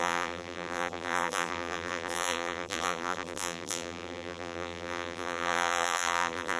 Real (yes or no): no